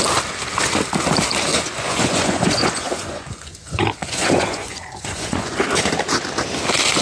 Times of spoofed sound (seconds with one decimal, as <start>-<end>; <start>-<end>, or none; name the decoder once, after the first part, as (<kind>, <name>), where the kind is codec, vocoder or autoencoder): 1.5-5.6 (vocoder, Vocos)